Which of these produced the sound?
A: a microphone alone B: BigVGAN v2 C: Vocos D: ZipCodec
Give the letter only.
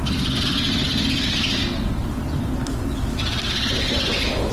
A